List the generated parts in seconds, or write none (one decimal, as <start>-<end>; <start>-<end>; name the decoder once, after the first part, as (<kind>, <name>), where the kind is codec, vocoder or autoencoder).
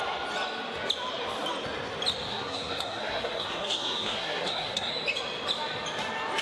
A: 2.3-4.9 (codec, SNAC)